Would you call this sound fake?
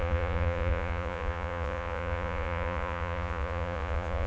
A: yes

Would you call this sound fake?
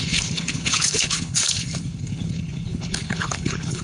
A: yes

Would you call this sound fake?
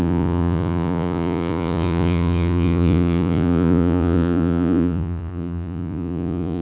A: yes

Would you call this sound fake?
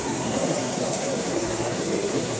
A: yes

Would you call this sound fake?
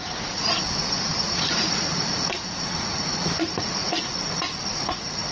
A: yes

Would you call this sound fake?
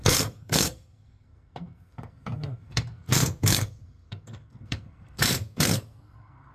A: yes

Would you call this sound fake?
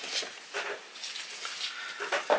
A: no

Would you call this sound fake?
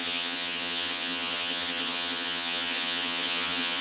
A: yes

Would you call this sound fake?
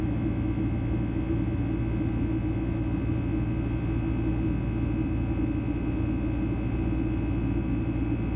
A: no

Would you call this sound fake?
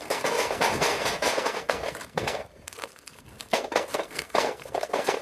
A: yes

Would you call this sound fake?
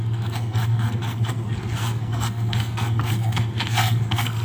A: yes